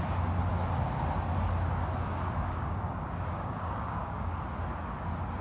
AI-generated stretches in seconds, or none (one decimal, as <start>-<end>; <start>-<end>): 2.1-4.4